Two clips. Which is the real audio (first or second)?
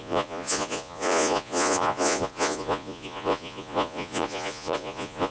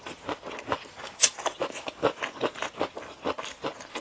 second